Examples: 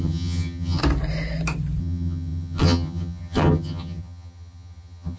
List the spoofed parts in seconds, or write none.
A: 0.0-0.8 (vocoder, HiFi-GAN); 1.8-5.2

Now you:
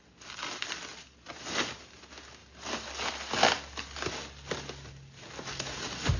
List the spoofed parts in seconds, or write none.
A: none

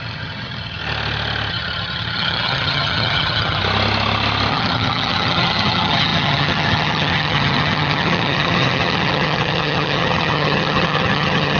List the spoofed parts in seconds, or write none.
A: 0.0-0.8 (vocoder, HiFi-GAN); 1.5-3.6; 4.5-11.6

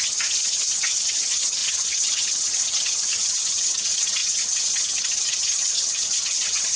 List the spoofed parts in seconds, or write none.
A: 0.0-6.8 (vocoder, HiFi-GAN)

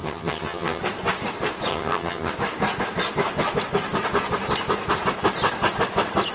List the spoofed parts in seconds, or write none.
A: 0.0-0.8 (vocoder, HiFi-GAN); 1.7-2.3